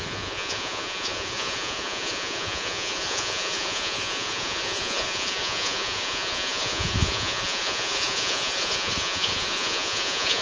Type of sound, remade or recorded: remade